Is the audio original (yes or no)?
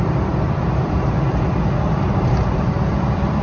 no